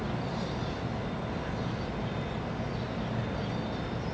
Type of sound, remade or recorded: recorded